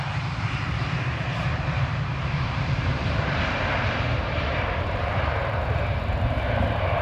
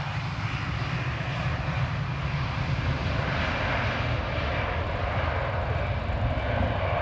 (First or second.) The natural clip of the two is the second